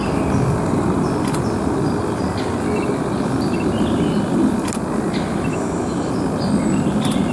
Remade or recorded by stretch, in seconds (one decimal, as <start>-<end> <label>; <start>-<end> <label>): 0.0-5.5 recorded; 5.5-6.1 remade; 6.1-7.3 recorded